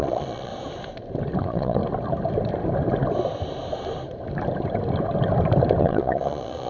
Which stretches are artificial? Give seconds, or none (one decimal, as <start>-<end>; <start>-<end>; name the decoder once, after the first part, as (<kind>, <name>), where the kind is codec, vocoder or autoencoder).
0.0-0.5 (vocoder, Vocos); 1.4-1.8; 5.8-6.7